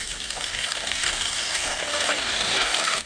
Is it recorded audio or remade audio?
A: remade